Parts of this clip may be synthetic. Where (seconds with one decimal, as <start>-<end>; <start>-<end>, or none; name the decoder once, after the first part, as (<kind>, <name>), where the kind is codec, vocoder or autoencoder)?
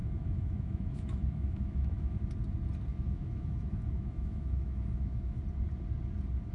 0.0-2.2 (autoencoder, DAC-VAE); 2.9-5.4